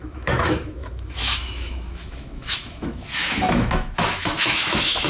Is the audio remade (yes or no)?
yes